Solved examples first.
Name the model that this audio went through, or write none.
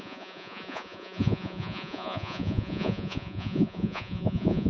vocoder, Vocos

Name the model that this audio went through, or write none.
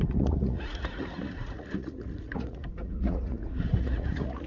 vocoder, Vocos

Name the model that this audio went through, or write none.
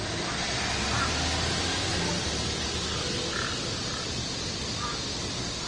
none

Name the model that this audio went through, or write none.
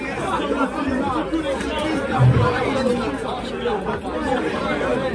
none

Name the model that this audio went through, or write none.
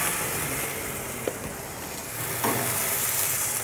none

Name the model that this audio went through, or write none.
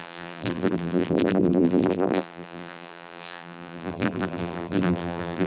vocoder, BigVGAN v2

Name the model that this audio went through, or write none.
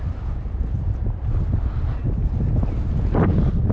none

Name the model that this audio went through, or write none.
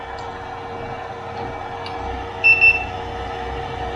none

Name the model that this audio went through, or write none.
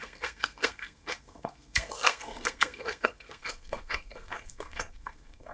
codec, SNAC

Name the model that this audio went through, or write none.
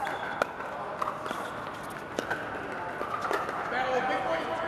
none